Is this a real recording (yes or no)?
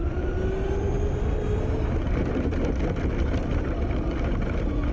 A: yes